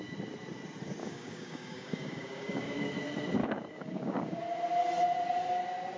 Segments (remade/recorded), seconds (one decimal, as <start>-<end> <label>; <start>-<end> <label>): 0.0-1.0 recorded; 1.0-2.9 remade; 2.9-3.4 recorded; 3.4-4.4 remade; 4.4-6.0 recorded